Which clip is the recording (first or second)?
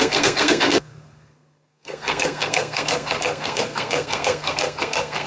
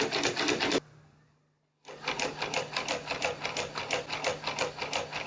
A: second